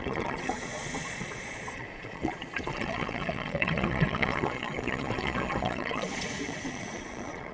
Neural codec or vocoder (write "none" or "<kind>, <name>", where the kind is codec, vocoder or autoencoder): vocoder, Vocos